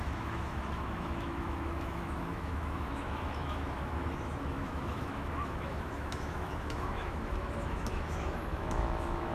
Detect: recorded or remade remade